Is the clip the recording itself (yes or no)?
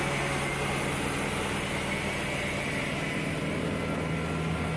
yes